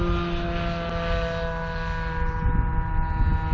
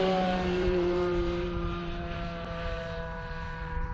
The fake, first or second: second